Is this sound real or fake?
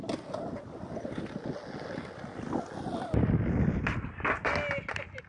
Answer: real